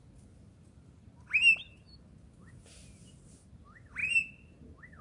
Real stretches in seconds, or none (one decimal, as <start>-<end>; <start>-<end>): 0.0-5.0